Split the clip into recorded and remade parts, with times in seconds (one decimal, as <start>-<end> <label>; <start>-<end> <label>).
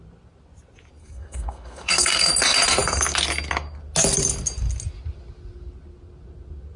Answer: 0.0-1.0 recorded; 1.0-2.3 remade; 2.3-6.8 recorded